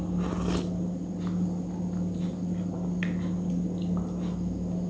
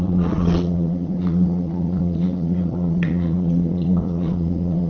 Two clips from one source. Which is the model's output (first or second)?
second